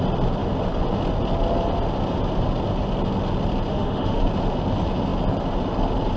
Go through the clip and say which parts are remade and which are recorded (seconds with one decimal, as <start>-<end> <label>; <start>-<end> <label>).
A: 0.0-3.7 recorded; 3.7-4.2 remade; 4.2-6.2 recorded

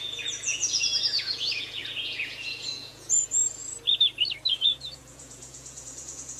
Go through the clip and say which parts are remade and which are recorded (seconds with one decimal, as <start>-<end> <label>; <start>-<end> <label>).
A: 0.0-3.6 remade; 3.6-4.5 recorded; 4.5-6.4 remade

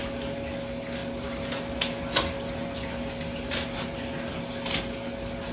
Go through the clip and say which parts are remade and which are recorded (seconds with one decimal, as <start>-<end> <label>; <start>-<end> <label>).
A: 0.0-5.5 recorded

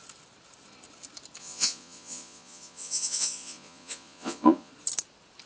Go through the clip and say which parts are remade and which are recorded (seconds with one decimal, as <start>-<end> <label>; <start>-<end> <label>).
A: 0.0-1.4 recorded; 1.4-4.7 remade; 4.7-5.5 recorded

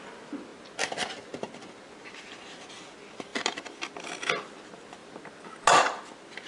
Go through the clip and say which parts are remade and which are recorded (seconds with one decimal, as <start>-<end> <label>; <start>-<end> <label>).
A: 0.0-6.5 recorded

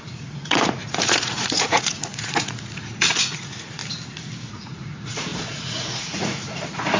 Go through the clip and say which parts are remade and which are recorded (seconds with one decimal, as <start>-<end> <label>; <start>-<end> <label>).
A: 0.0-3.8 remade; 3.8-4.5 recorded; 4.5-7.0 remade

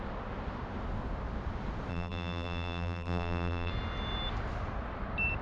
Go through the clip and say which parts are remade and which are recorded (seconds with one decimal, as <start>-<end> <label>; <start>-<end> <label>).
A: 0.0-1.9 recorded; 1.9-3.7 remade; 3.7-5.4 recorded